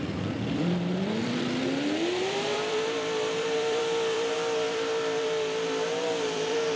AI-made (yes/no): yes